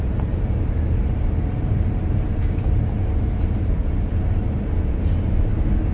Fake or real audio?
fake